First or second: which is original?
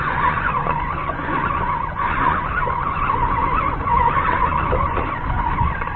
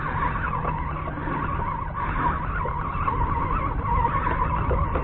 second